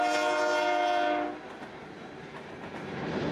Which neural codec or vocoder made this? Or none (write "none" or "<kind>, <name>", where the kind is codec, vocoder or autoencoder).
none